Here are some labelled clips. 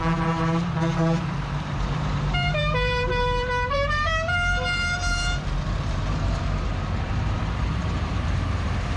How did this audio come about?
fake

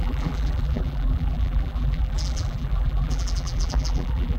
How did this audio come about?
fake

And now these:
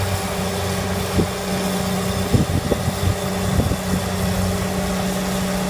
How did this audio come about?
real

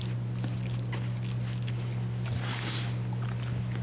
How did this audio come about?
real